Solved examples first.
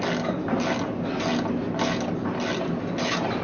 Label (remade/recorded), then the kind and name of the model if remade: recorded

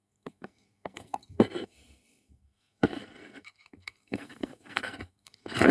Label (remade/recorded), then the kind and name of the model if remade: remade, codec, SNAC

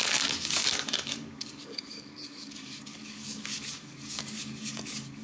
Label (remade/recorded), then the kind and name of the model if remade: remade, codec, DAC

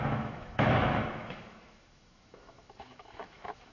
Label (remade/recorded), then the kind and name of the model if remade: remade, autoencoder, DAC-VAE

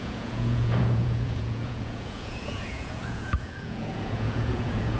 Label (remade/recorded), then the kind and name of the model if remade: remade, vocoder, Vocos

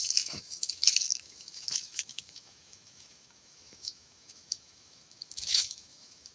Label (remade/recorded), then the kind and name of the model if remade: remade, autoencoder, DAC-VAE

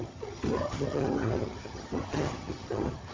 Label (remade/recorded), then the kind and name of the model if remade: remade, vocoder, HiFi-GAN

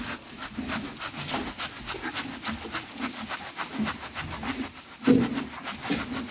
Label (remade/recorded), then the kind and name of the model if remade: recorded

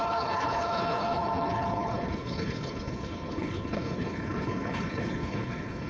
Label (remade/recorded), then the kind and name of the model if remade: remade, codec, HILCodec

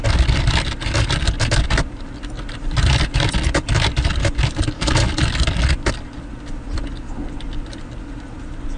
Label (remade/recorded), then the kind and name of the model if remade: recorded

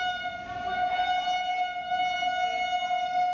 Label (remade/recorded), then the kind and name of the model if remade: recorded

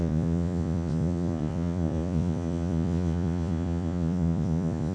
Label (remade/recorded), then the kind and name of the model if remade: remade, vocoder, Vocos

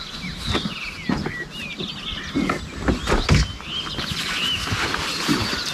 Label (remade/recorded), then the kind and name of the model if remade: recorded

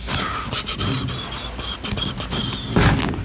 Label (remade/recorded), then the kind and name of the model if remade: recorded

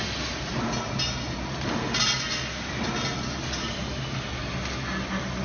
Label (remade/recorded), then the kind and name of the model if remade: recorded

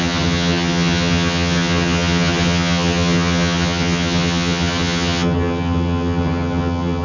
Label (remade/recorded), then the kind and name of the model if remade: remade, vocoder, HiFi-GAN